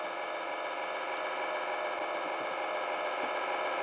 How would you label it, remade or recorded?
recorded